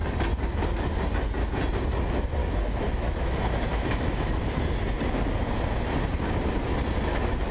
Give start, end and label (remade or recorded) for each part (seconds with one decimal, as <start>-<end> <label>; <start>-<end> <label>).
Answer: 0.0-2.4 recorded; 2.4-4.5 remade; 4.5-7.5 recorded